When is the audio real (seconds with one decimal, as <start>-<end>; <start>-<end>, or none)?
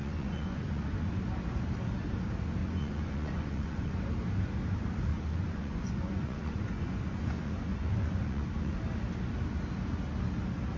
1.1-2.6; 4.0-5.1; 8.8-10.8